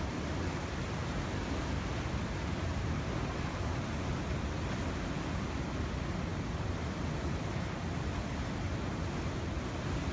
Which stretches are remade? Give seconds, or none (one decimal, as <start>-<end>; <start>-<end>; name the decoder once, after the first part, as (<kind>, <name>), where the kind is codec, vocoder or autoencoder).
none